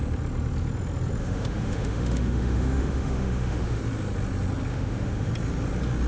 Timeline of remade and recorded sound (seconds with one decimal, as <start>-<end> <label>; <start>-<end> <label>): 0.0-1.2 recorded; 1.2-3.8 remade; 3.8-4.7 recorded; 4.7-5.3 remade; 5.3-6.1 recorded